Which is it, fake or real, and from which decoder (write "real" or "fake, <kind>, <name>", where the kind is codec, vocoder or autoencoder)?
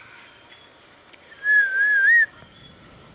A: real